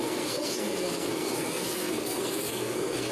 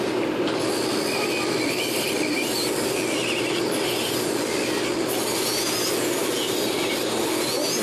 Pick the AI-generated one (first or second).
first